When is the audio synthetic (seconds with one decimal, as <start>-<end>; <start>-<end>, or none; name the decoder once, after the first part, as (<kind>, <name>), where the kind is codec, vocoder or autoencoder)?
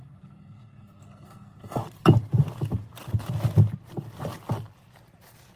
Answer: 0.0-1.8 (codec, SNAC)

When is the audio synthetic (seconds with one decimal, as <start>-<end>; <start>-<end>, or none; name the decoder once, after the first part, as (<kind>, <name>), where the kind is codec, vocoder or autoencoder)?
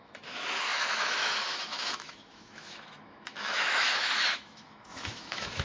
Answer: 0.0-5.6 (autoencoder, DAC-VAE)